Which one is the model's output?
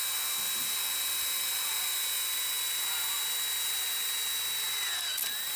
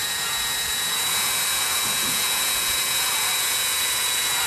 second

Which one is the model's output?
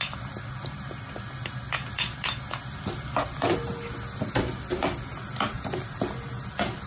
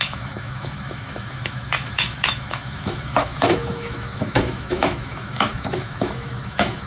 second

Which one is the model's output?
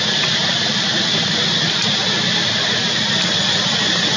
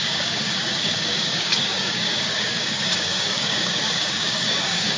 second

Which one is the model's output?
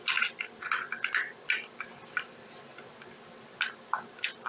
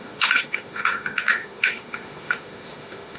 second